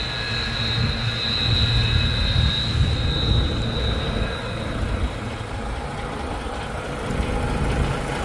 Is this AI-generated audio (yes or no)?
no